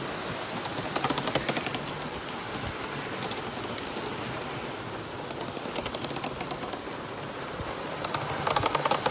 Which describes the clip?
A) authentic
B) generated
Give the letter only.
A